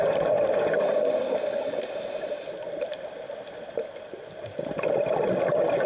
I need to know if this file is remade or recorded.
recorded